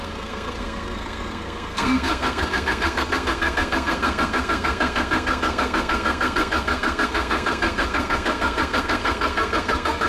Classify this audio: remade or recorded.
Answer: remade